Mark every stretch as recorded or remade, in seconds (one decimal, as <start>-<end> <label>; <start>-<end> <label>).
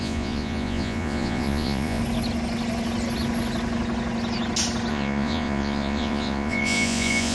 0.0-2.0 remade; 2.0-4.9 recorded; 4.9-7.3 remade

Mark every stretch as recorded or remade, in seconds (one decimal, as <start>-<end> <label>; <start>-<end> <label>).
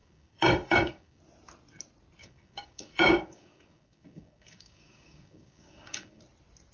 0.0-1.2 remade; 1.2-2.2 recorded; 2.2-6.2 remade; 6.2-6.7 recorded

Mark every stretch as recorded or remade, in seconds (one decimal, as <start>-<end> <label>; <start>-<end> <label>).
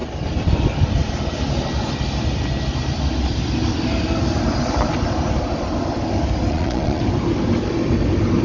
0.0-6.5 recorded; 6.5-7.0 remade; 7.0-8.4 recorded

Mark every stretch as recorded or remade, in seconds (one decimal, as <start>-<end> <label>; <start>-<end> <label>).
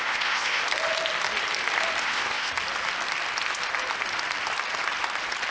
0.0-0.6 remade; 0.6-2.0 recorded; 2.0-2.5 remade; 2.5-5.5 recorded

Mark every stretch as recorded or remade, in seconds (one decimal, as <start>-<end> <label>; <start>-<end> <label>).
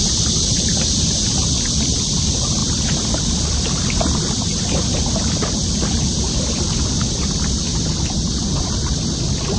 0.0-9.6 recorded